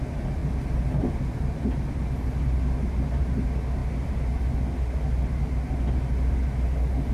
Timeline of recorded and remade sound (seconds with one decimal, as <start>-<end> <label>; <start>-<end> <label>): 0.0-0.4 recorded; 0.4-1.9 remade; 1.9-7.1 recorded